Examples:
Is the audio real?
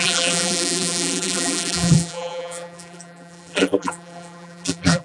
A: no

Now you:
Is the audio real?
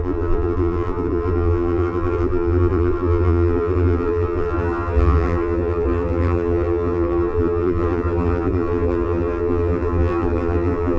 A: no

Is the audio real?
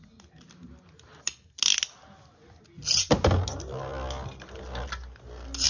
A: yes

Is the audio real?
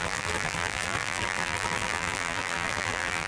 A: no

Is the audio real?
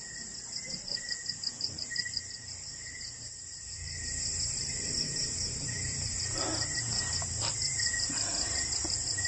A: no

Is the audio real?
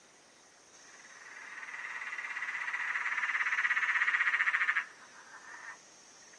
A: yes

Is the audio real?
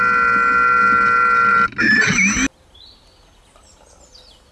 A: yes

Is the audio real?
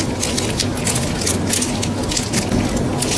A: yes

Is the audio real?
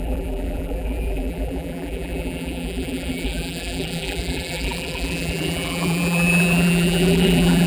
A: no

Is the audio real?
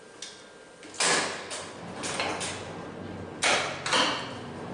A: yes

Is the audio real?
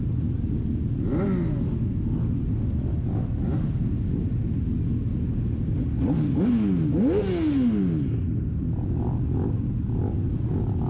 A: yes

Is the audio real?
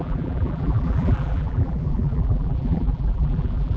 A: no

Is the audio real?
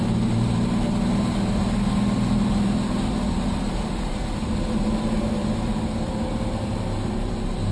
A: no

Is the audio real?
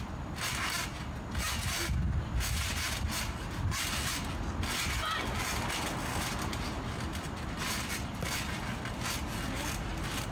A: yes